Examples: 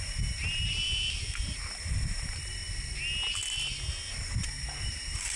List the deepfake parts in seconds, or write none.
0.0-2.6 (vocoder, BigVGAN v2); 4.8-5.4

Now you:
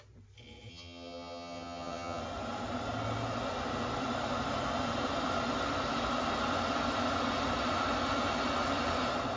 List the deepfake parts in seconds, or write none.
0.7-2.2 (vocoder, HiFi-GAN)

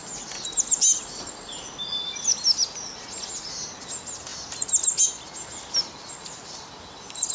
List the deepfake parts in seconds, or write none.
none

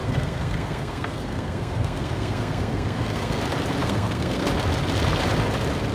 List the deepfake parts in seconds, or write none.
0.0-3.4 (codec, SNAC); 3.8-4.5

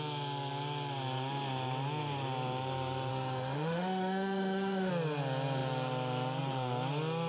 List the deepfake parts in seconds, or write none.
3.1-4.9 (autoencoder, DAC-VAE)

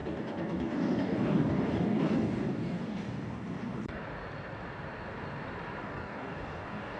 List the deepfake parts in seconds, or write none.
0.0-4.0 (codec, DAC); 5.8-7.0

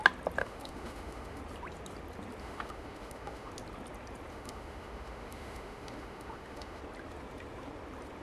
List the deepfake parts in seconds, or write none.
0.4-1.4 (autoencoder, DAC-VAE); 2.4-3.5; 4.3-6.8